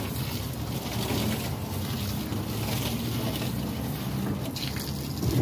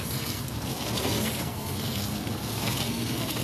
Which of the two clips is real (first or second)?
first